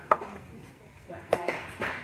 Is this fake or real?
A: fake